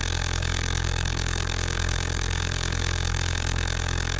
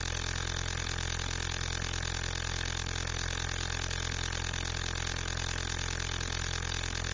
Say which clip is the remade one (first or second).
first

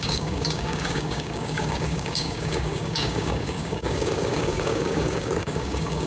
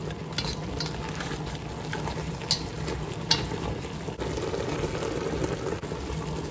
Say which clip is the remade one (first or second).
first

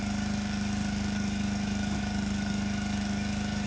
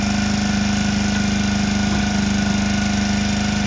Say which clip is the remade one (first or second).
first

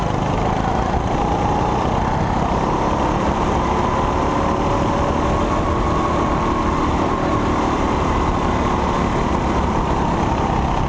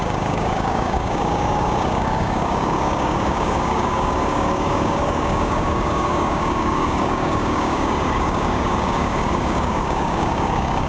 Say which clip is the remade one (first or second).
second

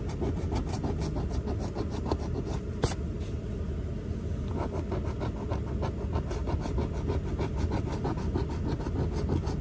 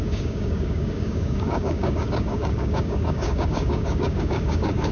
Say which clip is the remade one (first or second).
second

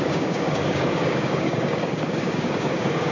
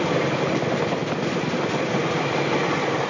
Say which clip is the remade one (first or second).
first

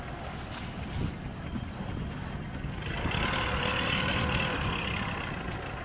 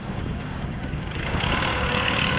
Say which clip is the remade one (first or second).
second